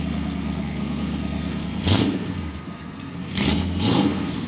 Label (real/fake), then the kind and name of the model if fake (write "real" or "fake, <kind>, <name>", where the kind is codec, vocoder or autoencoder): fake, codec, SNAC